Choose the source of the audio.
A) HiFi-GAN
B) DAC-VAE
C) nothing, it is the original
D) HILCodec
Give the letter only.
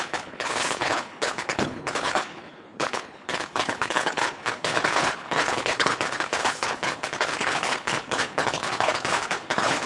D